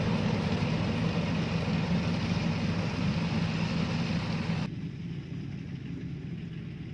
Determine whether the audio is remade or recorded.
recorded